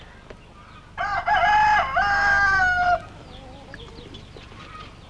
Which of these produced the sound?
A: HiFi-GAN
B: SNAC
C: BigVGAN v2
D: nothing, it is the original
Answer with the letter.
D